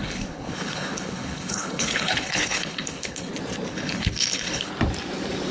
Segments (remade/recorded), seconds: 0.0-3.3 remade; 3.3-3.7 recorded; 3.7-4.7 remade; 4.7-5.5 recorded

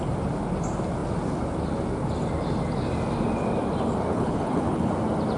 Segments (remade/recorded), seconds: 0.0-4.1 recorded; 4.1-4.9 remade; 4.9-5.4 recorded

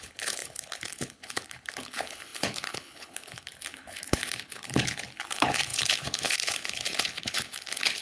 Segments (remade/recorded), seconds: 0.0-8.0 remade

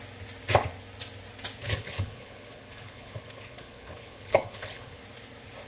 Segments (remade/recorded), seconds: 0.0-1.6 recorded; 1.6-5.0 remade; 5.0-5.7 recorded

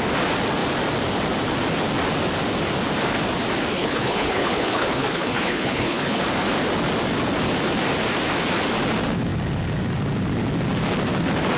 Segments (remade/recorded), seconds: 0.0-3.7 recorded; 3.7-6.2 remade; 6.2-11.6 recorded

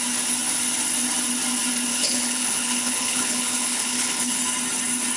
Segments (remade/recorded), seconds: 0.0-1.9 recorded; 1.9-4.4 remade; 4.4-5.2 recorded